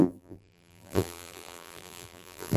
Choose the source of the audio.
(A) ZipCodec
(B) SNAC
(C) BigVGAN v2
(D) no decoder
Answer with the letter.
C